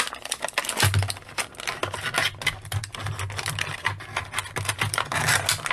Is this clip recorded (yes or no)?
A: yes